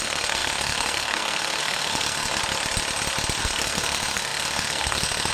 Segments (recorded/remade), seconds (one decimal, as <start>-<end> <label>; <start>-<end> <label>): 0.0-2.4 remade; 2.4-3.4 recorded; 3.4-5.3 remade